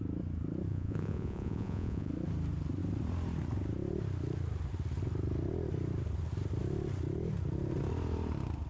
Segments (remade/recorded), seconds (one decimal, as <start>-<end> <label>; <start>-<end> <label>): 0.0-0.7 recorded; 0.7-2.1 remade; 2.1-8.7 recorded